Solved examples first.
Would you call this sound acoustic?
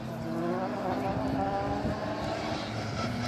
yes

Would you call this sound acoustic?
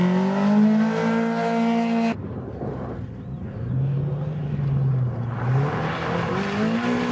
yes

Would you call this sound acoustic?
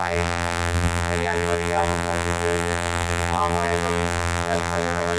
no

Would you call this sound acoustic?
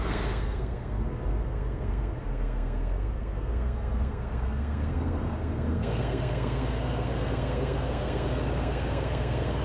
no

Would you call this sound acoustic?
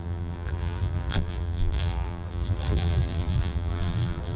no